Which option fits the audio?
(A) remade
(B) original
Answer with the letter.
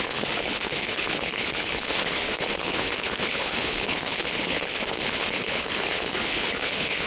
A